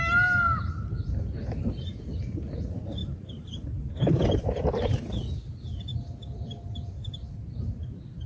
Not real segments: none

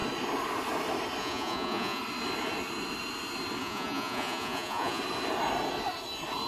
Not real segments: 1.2-2.0 (vocoder, Vocos); 3.6-5.0

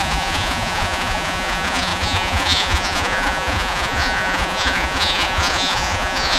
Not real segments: 0.0-6.4 (vocoder, Vocos)

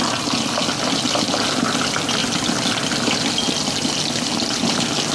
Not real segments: none

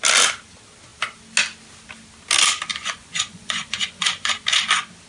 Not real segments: 2.7-4.3 (vocoder, Vocos)

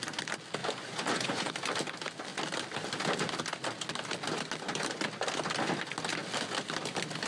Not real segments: 0.6-1.5 (vocoder, Vocos)